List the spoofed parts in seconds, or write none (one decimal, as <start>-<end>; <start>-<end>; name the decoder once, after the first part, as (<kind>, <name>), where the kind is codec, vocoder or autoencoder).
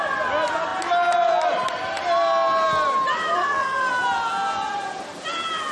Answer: 3.3-3.9 (codec, SNAC)